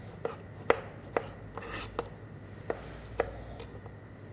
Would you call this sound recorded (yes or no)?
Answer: yes